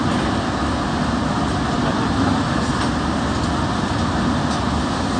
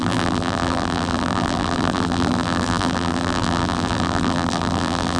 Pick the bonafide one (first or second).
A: first